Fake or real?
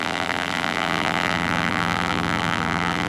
fake